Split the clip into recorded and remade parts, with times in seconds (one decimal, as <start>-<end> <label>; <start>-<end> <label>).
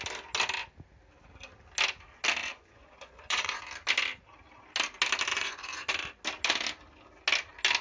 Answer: 0.0-2.4 recorded; 2.4-3.6 remade; 3.6-5.3 recorded; 5.3-5.9 remade; 5.9-7.8 recorded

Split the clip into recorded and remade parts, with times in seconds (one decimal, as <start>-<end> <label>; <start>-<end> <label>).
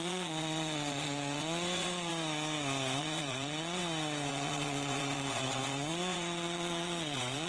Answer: 0.0-2.1 remade; 2.1-3.0 recorded; 3.0-3.8 remade; 3.8-4.3 recorded; 4.3-7.5 remade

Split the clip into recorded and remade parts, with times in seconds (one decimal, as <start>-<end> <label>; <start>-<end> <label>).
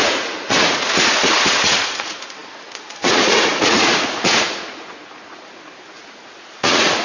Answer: 0.0-7.0 remade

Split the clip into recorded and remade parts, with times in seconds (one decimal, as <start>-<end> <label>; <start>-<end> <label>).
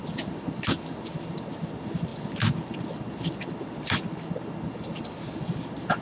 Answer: 0.0-6.0 recorded